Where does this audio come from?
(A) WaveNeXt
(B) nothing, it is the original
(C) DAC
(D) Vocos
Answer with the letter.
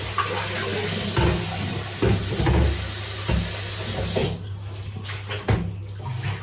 B